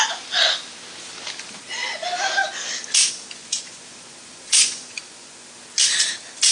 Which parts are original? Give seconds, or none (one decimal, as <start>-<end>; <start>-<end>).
0.0-3.4; 5.5-6.5